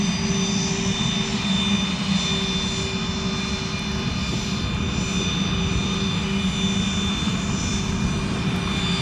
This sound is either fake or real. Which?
real